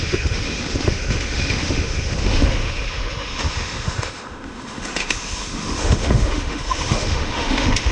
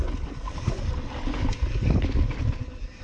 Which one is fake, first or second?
first